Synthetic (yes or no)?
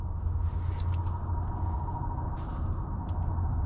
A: no